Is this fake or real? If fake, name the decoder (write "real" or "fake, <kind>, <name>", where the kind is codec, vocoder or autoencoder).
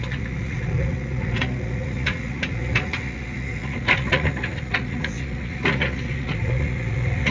fake, vocoder, Vocos